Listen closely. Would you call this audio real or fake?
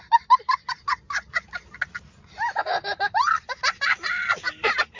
real